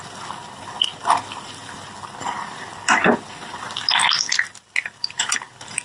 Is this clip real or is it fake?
real